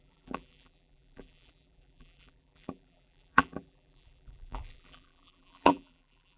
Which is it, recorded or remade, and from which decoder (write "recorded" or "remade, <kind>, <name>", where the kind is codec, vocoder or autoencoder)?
remade, vocoder, BigVGAN v2